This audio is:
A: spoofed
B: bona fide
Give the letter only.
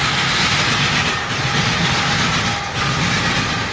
B